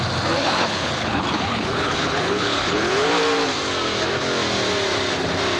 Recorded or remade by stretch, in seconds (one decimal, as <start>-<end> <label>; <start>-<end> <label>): 0.0-0.4 recorded; 0.4-3.1 remade; 3.1-5.6 recorded